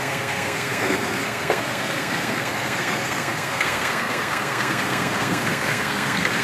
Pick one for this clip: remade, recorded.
remade